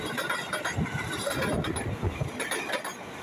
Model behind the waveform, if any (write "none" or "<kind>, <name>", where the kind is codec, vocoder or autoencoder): none